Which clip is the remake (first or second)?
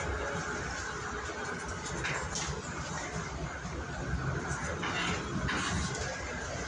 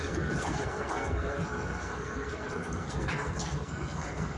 second